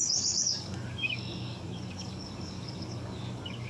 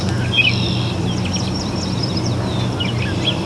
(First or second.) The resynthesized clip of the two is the first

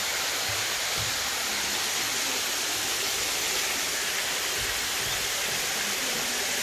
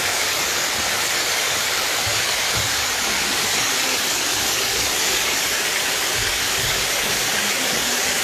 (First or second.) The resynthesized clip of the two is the second